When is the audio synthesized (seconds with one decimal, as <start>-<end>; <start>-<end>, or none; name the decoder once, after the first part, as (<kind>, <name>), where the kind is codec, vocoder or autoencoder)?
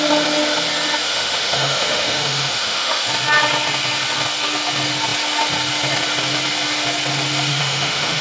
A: 1.1-3.1 (autoencoder, DAC-VAE); 7.5-8.2